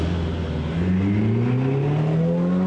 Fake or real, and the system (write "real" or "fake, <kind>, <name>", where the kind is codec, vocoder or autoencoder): real